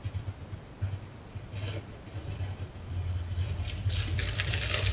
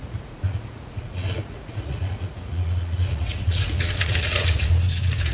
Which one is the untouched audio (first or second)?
first